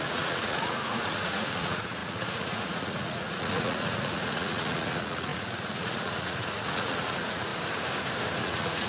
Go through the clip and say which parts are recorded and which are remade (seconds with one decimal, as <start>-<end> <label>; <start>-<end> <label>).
0.0-7.5 remade; 7.5-8.4 recorded; 8.4-8.9 remade